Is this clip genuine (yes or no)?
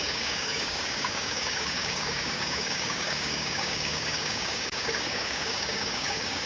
no